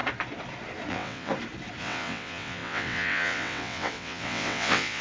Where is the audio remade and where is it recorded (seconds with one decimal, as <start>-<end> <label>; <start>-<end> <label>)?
0.0-0.9 recorded; 0.9-1.3 remade; 1.3-1.8 recorded; 1.8-5.0 remade